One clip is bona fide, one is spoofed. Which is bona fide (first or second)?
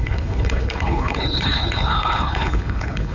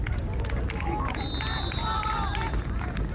second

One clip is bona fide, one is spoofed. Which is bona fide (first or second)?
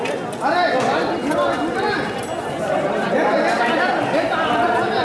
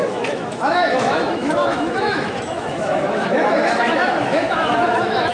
first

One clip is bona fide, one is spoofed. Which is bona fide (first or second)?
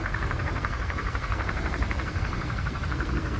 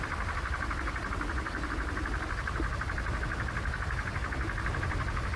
second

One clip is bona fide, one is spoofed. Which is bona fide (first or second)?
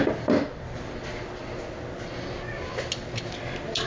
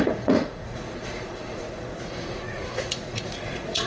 first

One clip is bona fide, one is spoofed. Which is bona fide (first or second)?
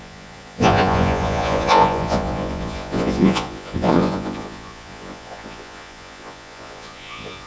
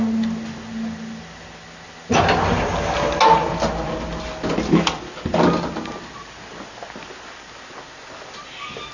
second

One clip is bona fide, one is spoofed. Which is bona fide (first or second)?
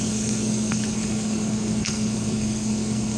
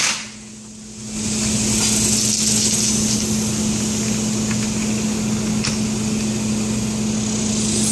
second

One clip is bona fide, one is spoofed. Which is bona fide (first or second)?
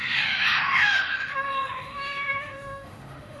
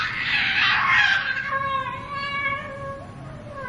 second